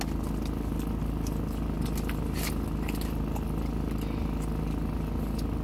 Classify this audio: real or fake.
real